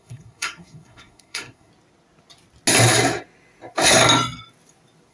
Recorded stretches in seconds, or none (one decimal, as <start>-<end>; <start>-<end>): 1.7-5.1